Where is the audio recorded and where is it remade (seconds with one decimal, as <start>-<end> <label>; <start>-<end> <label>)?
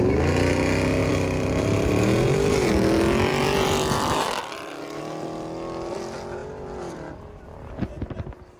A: 0.0-1.0 recorded; 1.0-2.7 remade; 2.7-3.3 recorded; 3.3-5.0 remade; 5.0-8.6 recorded